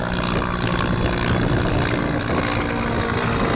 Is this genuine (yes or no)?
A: yes